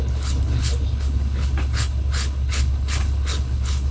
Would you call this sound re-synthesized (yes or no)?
yes